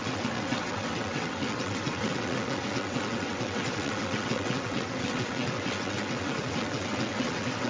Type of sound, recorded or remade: remade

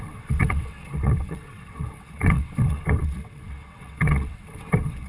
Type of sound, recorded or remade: remade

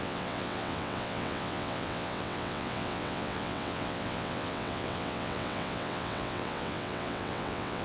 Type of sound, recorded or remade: remade